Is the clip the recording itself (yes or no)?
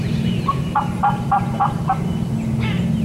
yes